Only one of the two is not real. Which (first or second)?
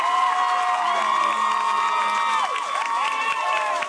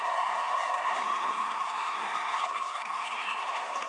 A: second